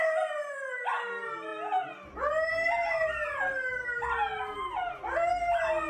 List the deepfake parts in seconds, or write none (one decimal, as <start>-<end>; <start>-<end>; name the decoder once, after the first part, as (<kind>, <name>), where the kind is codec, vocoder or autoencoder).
none